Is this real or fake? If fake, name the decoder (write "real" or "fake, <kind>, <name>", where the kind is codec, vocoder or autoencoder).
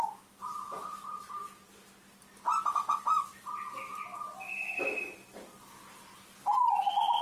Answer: real